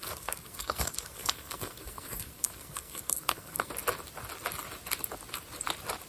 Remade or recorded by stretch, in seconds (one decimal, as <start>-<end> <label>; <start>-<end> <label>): 0.0-3.7 remade; 3.7-6.1 recorded